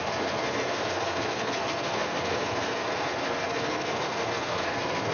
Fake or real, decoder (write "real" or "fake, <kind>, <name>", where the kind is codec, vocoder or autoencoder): fake, codec, SNAC